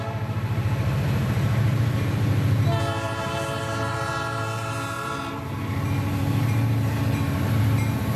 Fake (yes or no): yes